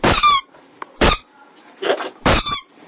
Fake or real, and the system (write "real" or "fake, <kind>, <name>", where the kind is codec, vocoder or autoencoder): fake, vocoder, BigVGAN v2